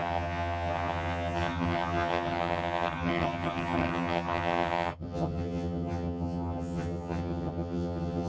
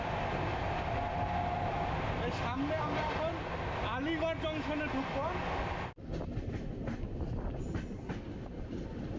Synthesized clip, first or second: first